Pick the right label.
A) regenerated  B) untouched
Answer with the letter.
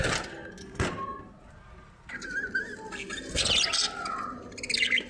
B